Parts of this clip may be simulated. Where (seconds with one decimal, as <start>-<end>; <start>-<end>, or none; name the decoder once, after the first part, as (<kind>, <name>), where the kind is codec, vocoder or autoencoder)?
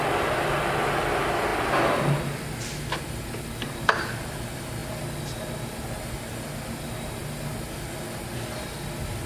none